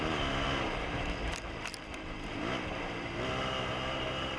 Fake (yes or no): no